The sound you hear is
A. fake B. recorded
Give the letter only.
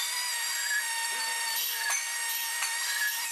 A